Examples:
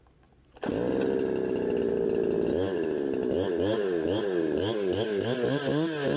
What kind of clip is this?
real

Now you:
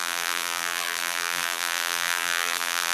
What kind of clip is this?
fake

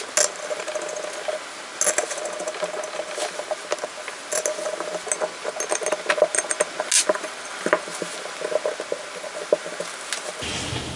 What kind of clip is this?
real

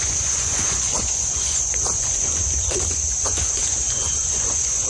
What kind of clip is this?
fake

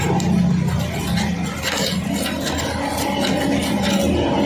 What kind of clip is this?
real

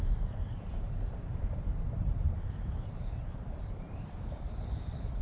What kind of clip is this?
fake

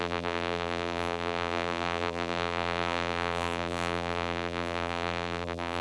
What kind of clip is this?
fake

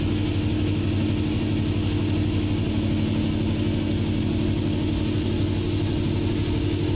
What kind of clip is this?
real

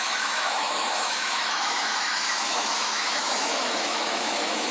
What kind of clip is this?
fake